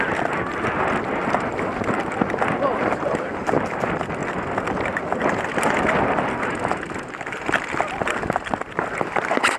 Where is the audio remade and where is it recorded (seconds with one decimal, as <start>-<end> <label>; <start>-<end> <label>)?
0.0-9.6 recorded